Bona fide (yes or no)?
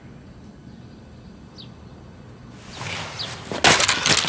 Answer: yes